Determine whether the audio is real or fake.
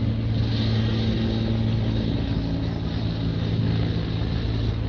real